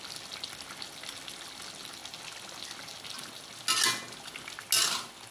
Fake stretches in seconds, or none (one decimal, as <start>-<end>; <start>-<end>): none